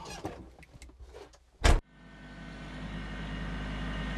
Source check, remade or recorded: recorded